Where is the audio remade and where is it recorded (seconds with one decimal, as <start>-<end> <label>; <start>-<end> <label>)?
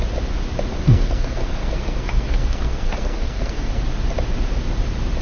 0.0-0.7 recorded; 0.7-3.8 remade; 3.8-5.2 recorded